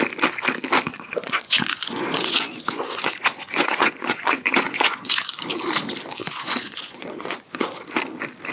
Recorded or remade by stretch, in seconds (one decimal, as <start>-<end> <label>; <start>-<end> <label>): 0.0-0.9 recorded; 0.9-5.3 remade; 5.3-6.2 recorded; 6.2-7.8 remade; 7.8-8.5 recorded